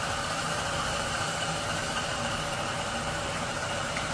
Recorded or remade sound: remade